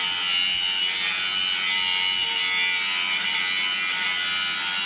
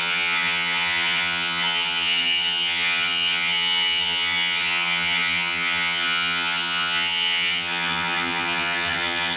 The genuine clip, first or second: first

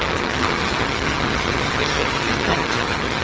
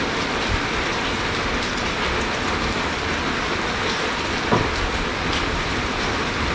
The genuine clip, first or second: second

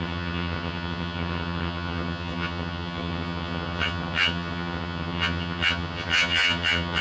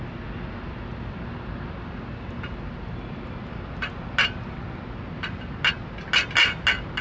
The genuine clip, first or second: second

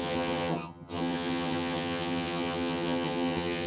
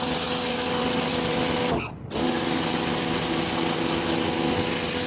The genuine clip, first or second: second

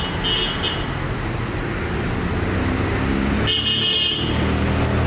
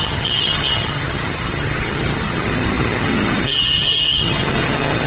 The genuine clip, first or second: first